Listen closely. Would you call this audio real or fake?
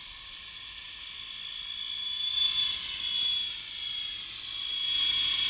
real